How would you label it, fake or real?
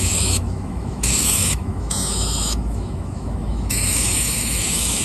fake